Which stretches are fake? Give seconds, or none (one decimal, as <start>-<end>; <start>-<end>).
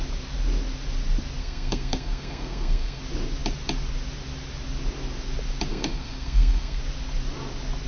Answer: 1.4-3.0; 5.7-6.8